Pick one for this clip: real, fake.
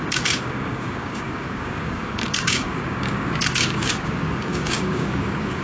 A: fake